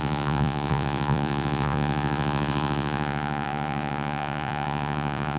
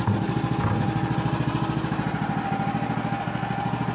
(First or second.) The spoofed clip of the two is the first